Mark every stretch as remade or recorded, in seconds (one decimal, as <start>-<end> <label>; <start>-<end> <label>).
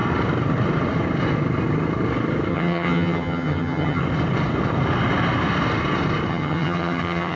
0.0-2.5 recorded; 2.5-4.0 remade; 4.0-6.3 recorded; 6.3-7.4 remade